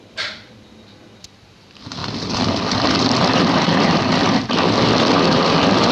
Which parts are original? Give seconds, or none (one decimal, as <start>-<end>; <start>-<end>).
0.0-2.0; 4.0-5.9